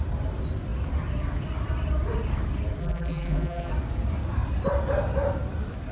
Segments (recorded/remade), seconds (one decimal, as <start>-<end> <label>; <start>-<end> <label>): 0.0-2.8 recorded; 2.8-3.7 remade; 3.7-5.9 recorded